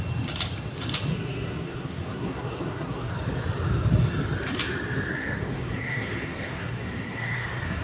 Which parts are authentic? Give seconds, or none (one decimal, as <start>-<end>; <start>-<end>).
0.0-1.1; 3.1-5.1

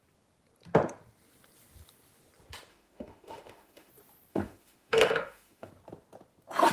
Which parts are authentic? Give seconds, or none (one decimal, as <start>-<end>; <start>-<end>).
0.0-2.7; 3.9-4.3; 5.7-6.7